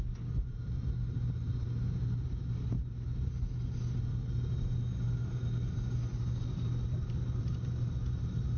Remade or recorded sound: recorded